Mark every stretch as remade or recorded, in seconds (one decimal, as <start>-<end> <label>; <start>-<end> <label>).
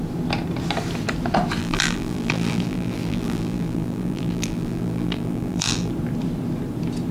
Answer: 0.0-1.6 recorded; 1.6-5.9 remade; 5.9-7.1 recorded